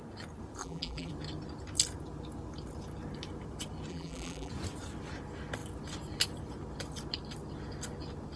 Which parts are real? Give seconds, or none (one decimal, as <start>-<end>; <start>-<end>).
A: 0.0-0.6; 1.1-3.9; 4.5-8.4